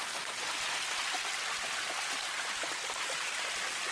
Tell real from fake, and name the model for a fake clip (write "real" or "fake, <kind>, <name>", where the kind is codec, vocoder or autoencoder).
real